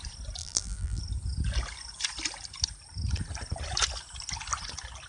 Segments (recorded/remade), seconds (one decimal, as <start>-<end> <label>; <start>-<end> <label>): 0.0-0.4 recorded; 0.4-1.0 remade; 1.0-5.1 recorded

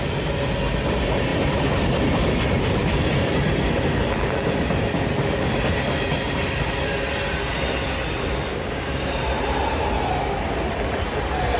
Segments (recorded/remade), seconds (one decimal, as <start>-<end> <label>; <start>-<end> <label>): 0.0-8.5 recorded; 8.5-9.1 remade; 9.1-11.6 recorded

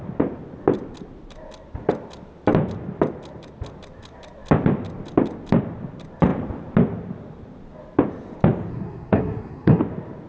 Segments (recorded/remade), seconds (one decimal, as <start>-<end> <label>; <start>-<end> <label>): 0.0-8.7 recorded; 8.7-9.8 remade; 9.8-10.3 recorded